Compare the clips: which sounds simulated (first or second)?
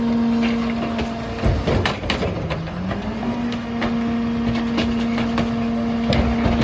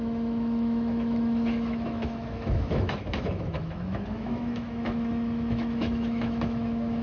second